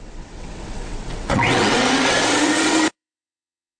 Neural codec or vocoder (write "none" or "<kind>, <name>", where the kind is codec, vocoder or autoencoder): vocoder, WaveNeXt